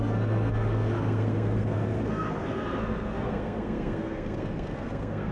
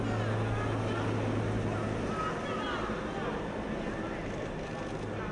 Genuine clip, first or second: second